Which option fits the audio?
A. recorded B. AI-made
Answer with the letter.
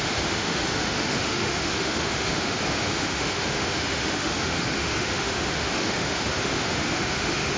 B